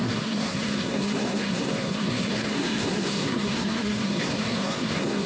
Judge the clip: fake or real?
fake